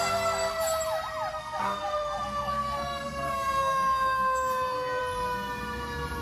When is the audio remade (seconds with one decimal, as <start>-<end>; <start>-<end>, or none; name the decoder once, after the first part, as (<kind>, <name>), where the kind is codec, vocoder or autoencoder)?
1.3-5.0 (codec, SNAC)